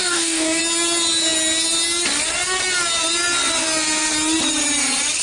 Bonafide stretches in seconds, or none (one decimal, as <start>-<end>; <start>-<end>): 0.6-5.2